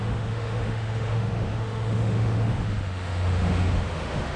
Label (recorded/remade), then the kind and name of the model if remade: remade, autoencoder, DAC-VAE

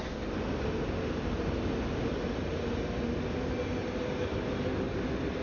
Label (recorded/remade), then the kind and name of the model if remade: recorded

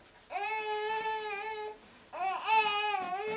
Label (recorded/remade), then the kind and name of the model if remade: recorded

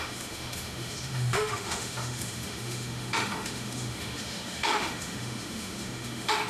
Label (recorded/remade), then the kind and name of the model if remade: remade, autoencoder, DAC-VAE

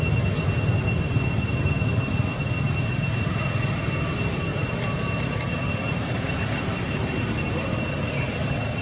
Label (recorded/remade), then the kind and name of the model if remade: recorded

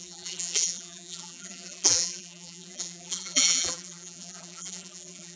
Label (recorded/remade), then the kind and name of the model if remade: remade, vocoder, BigVGAN v2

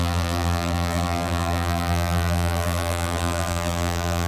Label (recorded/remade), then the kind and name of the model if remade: remade, vocoder, BigVGAN v2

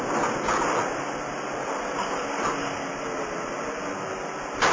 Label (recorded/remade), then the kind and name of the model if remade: recorded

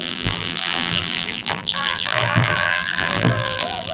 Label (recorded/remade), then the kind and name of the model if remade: remade, vocoder, BigVGAN v2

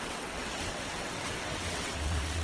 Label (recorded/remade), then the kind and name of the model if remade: remade, vocoder, WaveNeXt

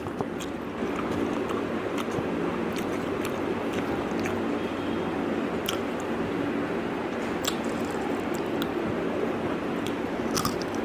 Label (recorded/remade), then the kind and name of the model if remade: recorded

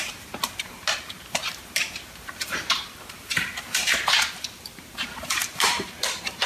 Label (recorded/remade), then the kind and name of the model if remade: remade, vocoder, BigVGAN v2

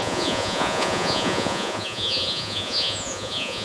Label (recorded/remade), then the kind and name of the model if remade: remade, vocoder, Vocos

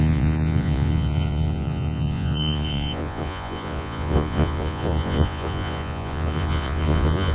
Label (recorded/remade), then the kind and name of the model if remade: remade, vocoder, Vocos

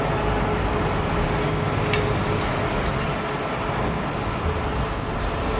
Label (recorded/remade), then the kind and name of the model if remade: recorded